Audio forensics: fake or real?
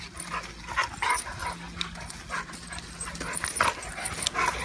real